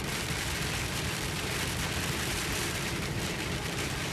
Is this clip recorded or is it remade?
remade